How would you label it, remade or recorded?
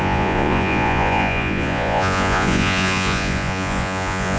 remade